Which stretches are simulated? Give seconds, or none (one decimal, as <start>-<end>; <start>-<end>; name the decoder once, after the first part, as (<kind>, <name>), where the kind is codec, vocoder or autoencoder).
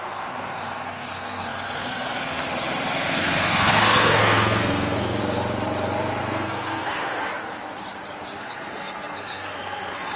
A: 0.0-2.4 (codec, SNAC); 3.1-5.2; 6.2-7.3; 8.4-10.2